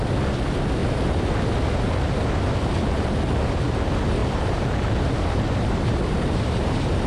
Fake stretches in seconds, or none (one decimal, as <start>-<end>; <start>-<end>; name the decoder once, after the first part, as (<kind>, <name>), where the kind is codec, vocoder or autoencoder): 4.2-7.1 (vocoder, BigVGAN v2)